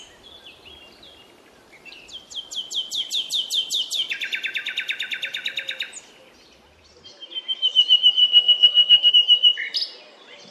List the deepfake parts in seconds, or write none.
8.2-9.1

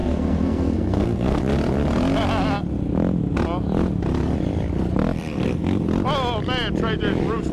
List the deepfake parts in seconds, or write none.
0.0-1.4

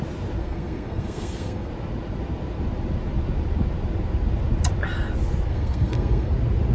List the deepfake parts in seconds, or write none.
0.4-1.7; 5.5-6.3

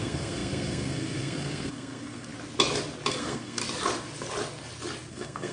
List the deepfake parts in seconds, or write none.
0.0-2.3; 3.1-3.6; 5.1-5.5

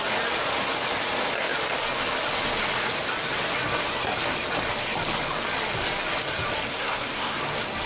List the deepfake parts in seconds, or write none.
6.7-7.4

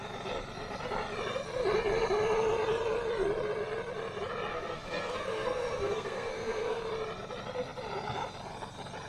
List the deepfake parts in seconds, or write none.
4.5-6.8

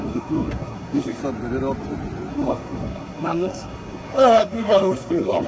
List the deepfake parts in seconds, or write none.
0.0-1.2; 2.3-5.5

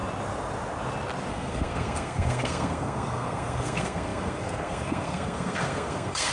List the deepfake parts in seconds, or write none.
1.3-6.3